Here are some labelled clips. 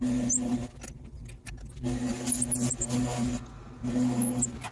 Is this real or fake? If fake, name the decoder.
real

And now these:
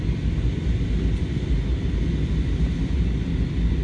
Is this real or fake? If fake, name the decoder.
real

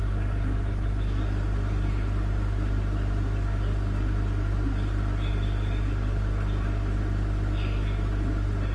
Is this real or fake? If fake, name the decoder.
real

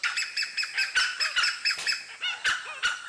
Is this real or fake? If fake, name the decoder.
real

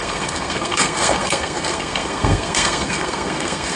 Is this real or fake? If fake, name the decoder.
fake, codec, SNAC